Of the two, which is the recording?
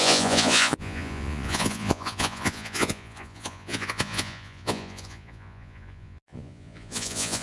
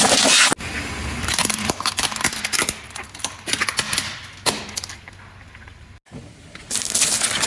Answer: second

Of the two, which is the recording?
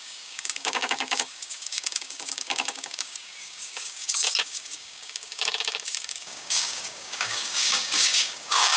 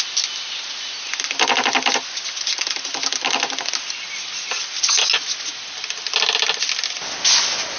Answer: second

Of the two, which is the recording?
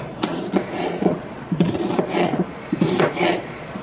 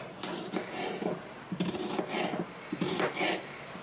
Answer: second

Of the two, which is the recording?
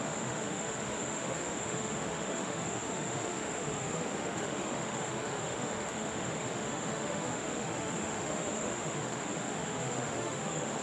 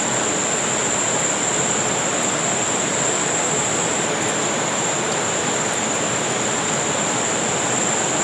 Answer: second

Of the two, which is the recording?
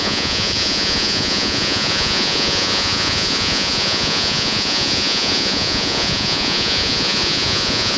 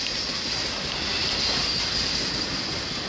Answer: second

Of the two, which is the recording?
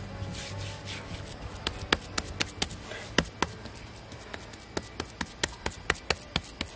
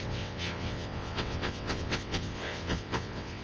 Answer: first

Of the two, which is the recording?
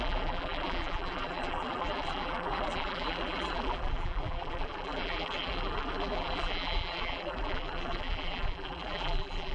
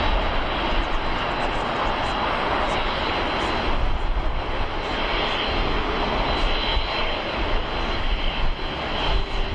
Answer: second